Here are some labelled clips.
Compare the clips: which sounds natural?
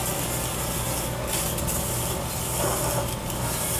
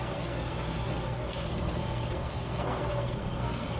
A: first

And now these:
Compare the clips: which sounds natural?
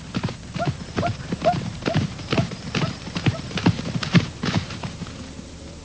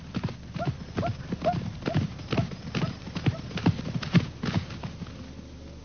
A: second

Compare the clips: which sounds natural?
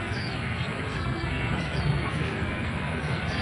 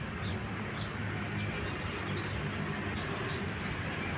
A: second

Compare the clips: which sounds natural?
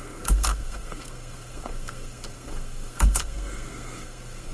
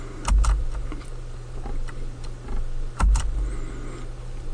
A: second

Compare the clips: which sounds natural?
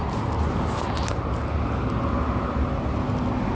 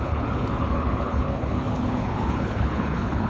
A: first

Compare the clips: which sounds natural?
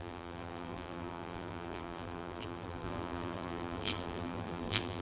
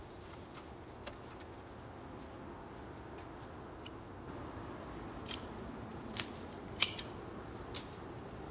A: second